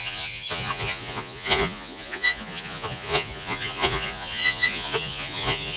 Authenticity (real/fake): fake